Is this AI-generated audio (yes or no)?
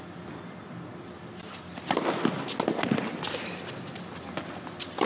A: no